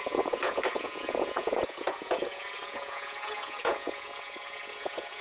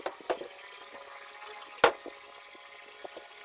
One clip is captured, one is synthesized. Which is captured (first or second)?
second